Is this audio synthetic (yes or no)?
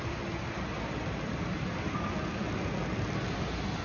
no